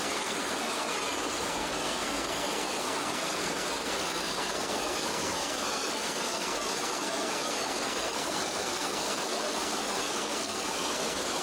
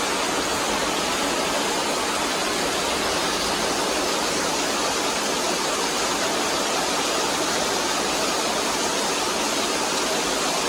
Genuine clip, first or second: second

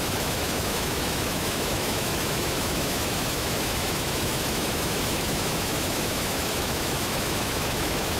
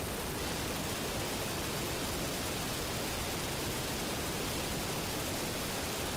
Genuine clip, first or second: second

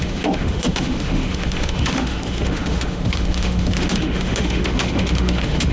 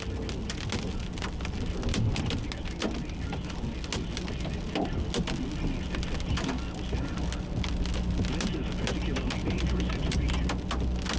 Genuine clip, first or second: second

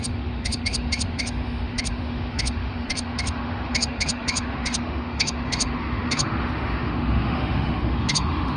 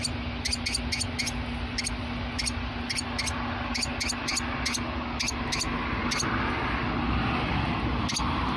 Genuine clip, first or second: second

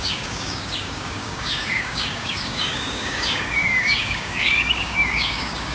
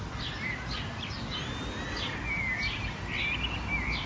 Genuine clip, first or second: second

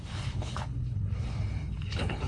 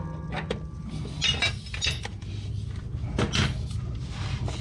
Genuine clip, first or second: second